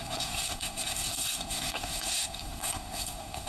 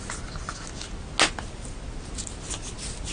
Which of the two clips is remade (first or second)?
first